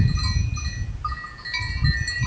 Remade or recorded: recorded